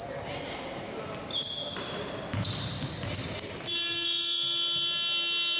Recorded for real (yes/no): yes